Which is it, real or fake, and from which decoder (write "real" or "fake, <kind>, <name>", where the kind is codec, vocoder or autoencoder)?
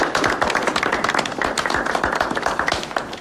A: fake, vocoder, BigVGAN v2